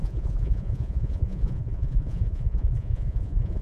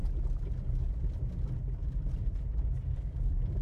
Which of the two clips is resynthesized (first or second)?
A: first